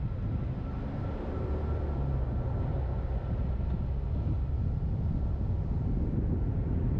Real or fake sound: real